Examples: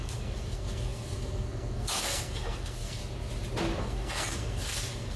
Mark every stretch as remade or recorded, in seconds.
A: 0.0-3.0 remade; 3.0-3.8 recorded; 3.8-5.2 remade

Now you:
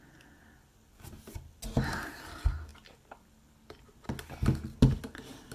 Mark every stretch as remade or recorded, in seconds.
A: 0.0-5.5 recorded